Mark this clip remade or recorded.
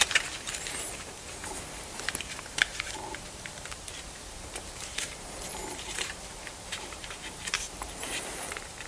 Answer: remade